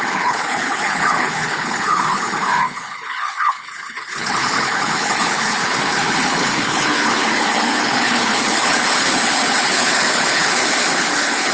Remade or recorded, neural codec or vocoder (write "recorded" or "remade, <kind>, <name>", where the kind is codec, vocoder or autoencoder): remade, codec, HILCodec